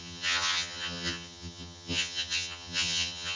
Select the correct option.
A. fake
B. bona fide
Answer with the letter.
A